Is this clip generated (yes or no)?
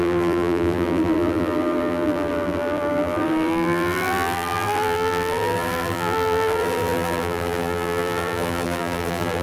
yes